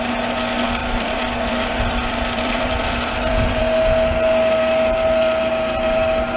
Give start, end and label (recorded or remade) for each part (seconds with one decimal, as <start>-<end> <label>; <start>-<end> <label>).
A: 0.0-0.8 recorded; 0.8-3.6 remade; 3.6-6.4 recorded